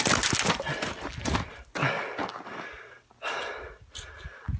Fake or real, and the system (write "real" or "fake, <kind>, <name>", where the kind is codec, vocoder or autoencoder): real